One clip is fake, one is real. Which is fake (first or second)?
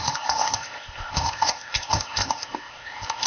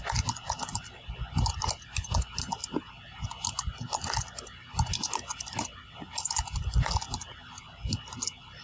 first